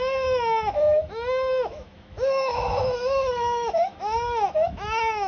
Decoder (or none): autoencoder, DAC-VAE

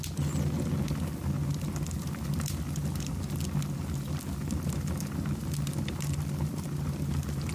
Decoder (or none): none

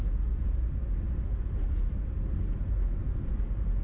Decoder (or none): none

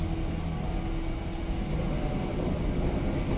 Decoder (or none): none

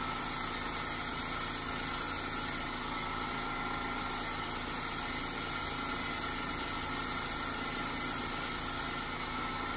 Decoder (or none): none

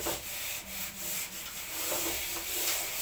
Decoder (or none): none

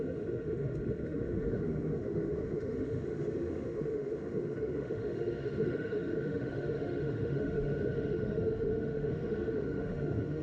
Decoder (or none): autoencoder, DAC-VAE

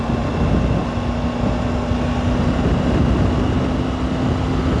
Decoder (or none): none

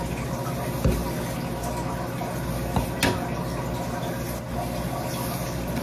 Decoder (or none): none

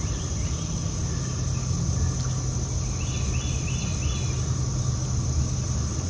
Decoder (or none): none